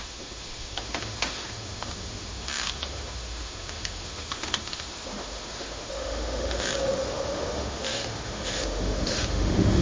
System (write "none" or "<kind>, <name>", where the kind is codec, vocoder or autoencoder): autoencoder, DAC-VAE